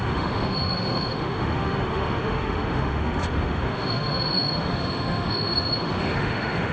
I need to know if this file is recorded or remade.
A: remade